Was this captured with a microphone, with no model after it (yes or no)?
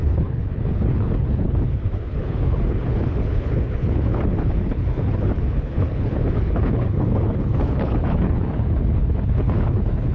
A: no